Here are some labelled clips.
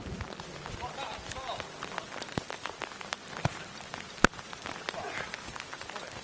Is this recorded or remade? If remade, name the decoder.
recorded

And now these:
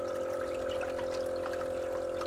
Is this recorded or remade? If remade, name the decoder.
recorded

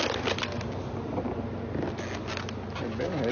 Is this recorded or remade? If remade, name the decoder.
recorded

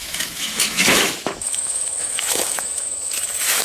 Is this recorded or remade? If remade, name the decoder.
remade, autoencoder, DAC-VAE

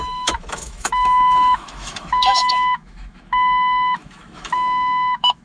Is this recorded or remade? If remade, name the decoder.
remade, autoencoder, DAC-VAE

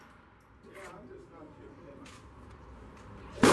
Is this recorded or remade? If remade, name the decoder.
recorded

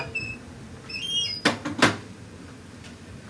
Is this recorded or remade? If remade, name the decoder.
recorded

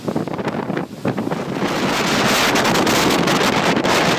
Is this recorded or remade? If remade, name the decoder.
recorded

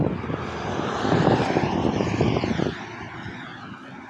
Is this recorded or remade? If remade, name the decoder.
recorded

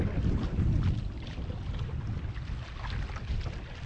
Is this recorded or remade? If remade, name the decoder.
recorded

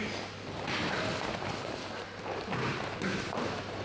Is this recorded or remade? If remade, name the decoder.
recorded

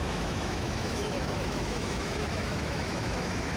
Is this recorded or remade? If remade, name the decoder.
remade, autoencoder, DAC-VAE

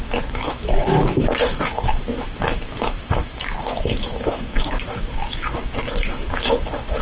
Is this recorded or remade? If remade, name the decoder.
remade, autoencoder, DAC-VAE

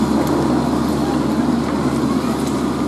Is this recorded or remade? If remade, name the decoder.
recorded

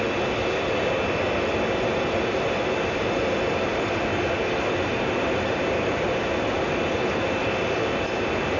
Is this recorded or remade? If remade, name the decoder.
recorded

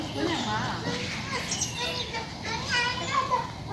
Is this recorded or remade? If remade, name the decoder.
recorded